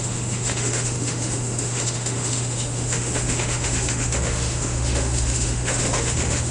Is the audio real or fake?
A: fake